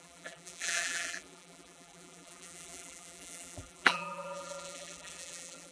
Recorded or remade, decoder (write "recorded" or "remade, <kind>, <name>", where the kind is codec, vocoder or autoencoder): remade, vocoder, BigVGAN v2